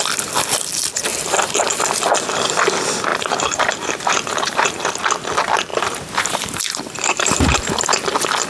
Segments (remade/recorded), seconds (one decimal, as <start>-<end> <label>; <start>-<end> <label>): 0.0-1.1 recorded; 1.1-1.8 remade; 1.8-3.1 recorded; 3.1-4.9 remade; 4.9-5.7 recorded; 5.7-7.9 remade; 7.9-8.5 recorded